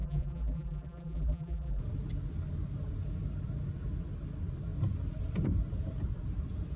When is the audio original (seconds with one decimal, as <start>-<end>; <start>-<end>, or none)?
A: 1.8-6.8